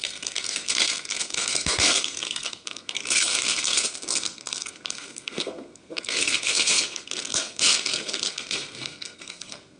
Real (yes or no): no